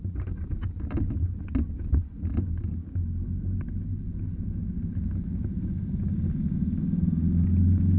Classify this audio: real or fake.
real